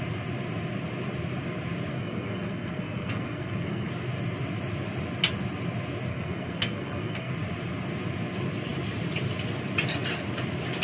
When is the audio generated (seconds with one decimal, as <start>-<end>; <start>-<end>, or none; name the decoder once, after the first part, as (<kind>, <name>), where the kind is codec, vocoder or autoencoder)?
1.9-3.9 (codec, SNAC); 6.1-7.3

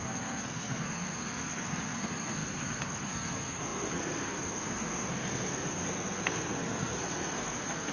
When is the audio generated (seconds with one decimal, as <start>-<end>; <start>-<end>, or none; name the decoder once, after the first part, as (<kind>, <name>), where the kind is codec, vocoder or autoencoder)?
0.0-7.9 (codec, SNAC)

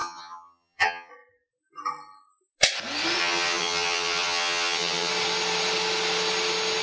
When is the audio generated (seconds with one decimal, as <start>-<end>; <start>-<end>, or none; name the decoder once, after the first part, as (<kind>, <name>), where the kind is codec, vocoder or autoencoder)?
0.0-1.1 (vocoder, HiFi-GAN); 3.2-5.1

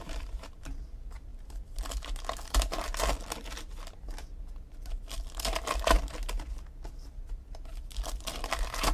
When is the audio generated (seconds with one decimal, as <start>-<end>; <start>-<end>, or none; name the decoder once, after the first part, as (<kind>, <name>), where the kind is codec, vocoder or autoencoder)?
0.0-0.7 (vocoder, BigVGAN v2)

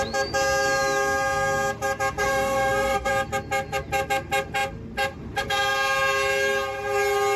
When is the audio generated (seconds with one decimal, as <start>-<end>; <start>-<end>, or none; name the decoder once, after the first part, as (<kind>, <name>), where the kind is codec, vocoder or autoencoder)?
2.2-3.1 (autoencoder, DAC-VAE)

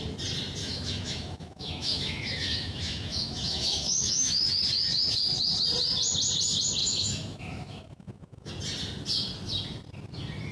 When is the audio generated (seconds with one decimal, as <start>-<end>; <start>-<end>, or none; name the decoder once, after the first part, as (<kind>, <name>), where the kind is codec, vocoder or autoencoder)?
0.6-4.5 (autoencoder, DAC-VAE); 6.8-8.5

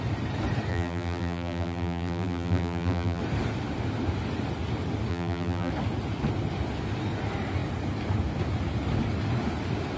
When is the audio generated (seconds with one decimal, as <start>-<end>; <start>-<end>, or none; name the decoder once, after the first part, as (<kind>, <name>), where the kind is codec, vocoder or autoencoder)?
0.7-3.2 (vocoder, BigVGAN v2); 5.1-5.7